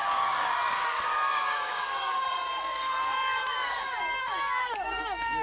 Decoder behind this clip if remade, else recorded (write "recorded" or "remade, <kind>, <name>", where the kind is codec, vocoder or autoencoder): remade, codec, DAC